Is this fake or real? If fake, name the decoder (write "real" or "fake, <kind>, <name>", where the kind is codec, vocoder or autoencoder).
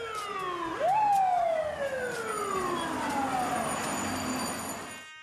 real